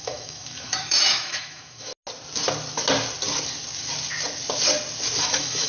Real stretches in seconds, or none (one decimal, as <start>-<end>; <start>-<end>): 1.9-5.2